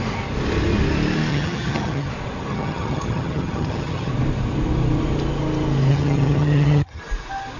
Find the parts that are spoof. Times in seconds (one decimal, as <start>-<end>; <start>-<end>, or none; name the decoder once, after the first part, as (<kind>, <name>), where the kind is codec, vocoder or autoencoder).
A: 1.3-2.1 (vocoder, HiFi-GAN); 2.5-4.1; 5.9-7.0